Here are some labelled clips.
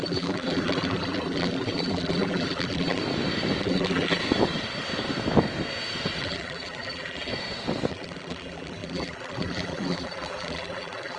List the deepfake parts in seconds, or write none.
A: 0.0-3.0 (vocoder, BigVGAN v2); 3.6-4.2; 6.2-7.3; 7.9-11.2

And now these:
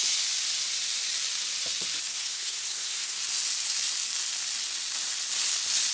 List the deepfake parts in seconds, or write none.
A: 2.1-3.2 (codec, SNAC)

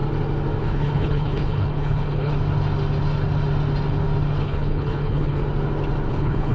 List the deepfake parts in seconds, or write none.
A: 0.6-2.3 (codec, HILCodec); 4.4-5.4; 6.1-6.5

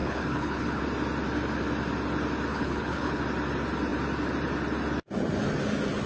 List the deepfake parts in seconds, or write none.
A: 0.0-0.8 (codec, HILCodec); 2.5-3.2

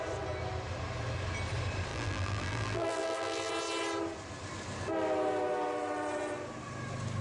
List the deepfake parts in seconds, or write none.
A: 1.9-3.5 (vocoder, BigVGAN v2)

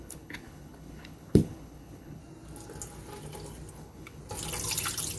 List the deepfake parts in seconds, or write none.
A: 0.0-2.2 (codec, HILCodec); 3.7-4.2

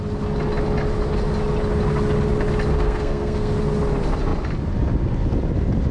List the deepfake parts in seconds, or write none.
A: 2.7-3.5 (codec, SNAC)